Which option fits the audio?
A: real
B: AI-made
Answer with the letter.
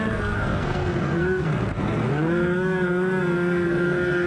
B